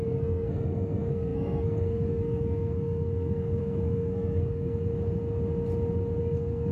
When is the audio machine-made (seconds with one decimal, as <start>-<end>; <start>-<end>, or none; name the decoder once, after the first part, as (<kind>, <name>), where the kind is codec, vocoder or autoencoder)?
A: 0.0-4.9 (codec, SNAC); 6.2-6.7